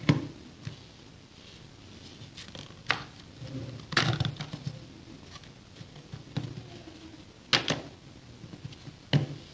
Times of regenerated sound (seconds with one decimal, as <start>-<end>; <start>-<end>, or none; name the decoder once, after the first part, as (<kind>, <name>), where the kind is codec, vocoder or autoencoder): none